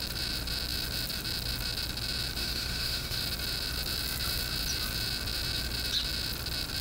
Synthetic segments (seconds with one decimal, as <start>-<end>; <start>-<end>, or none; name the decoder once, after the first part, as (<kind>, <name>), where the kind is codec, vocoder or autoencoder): 2.4-3.2 (autoencoder, DAC-VAE)